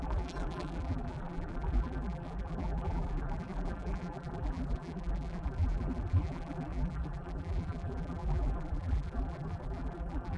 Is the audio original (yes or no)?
no